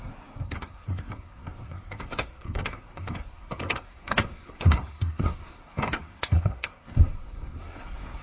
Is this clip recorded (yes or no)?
no